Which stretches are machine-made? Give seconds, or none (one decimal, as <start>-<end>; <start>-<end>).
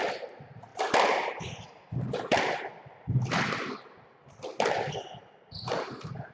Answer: 0.7-2.7